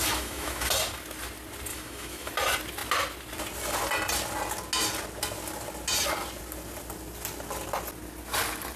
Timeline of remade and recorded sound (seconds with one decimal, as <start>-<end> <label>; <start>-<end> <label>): 0.0-0.7 remade; 0.7-1.7 recorded; 1.7-2.3 remade; 2.3-8.8 recorded